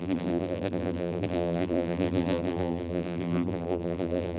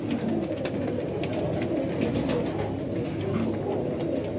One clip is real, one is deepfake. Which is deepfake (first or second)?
first